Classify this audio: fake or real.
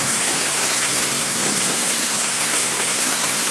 fake